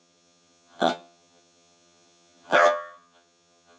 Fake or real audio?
fake